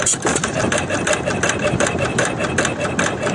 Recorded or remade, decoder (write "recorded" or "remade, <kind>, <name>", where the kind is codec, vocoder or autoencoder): remade, vocoder, BigVGAN v2